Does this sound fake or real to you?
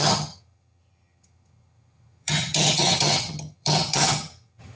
fake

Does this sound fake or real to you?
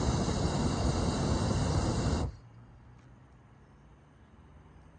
real